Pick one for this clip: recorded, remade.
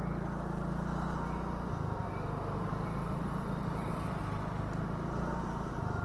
recorded